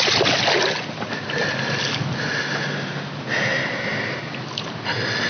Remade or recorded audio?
recorded